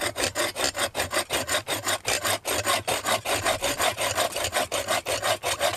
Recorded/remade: recorded